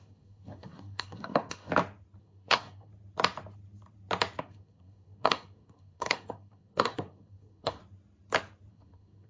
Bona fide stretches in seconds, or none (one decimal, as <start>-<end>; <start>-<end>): 1.7-2.2; 2.9-4.4; 7.8-8.7